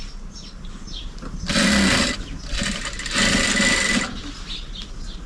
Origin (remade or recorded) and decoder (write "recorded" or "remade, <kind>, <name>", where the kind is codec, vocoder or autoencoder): recorded